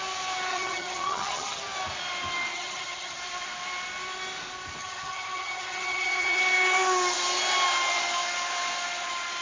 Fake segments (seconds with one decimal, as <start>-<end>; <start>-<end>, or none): 0.5-1.6; 2.5-3.2; 4.8-6.4